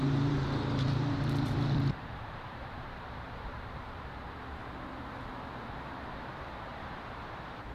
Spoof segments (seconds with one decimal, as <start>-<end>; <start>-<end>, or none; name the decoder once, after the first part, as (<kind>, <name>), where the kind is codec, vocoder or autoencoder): 0.0-4.6 (vocoder, BigVGAN v2); 5.8-7.7